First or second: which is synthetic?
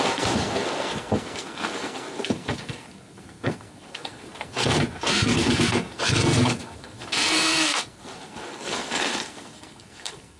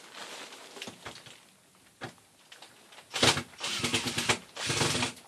first